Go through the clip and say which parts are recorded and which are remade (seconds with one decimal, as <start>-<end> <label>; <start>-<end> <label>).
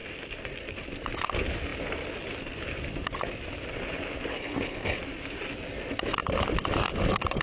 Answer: 0.0-4.3 recorded; 4.3-5.0 remade; 5.0-7.4 recorded